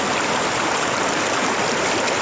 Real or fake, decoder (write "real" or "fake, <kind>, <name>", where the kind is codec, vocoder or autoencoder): real